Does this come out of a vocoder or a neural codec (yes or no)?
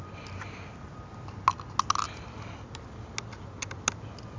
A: no